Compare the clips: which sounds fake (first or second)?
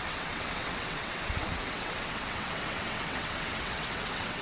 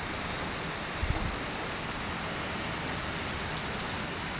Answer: first